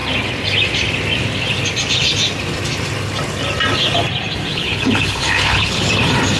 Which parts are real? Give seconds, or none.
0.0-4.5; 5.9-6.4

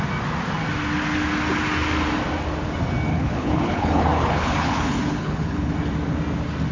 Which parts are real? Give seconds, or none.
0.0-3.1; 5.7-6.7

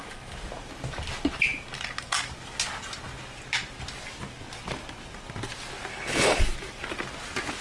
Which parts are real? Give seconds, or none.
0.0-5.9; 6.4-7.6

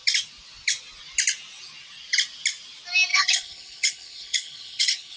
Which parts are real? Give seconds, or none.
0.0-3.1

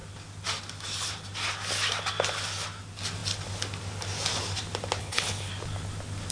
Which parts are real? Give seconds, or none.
0.0-5.0; 5.5-6.3

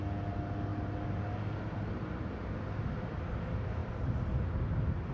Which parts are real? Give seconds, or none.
0.0-5.1

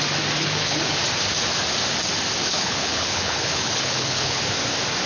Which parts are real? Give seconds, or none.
0.0-0.4; 1.0-2.5; 4.4-5.1